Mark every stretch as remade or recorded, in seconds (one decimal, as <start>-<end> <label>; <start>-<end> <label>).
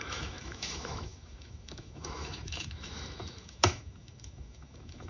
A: 0.0-5.1 remade